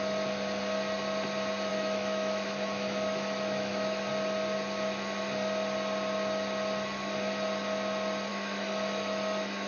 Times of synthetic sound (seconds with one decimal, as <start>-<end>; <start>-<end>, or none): 1.7-4.1; 8.3-9.7